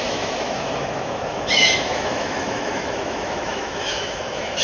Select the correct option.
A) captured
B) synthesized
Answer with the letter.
B